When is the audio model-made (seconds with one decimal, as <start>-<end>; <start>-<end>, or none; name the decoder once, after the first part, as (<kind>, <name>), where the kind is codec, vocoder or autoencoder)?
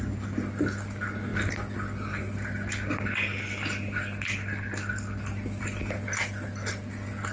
none